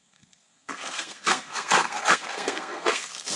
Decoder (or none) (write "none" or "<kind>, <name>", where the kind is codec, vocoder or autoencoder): codec, SNAC